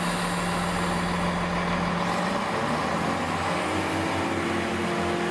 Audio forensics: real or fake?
real